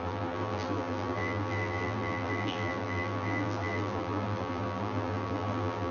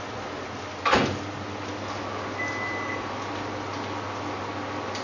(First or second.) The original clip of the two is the second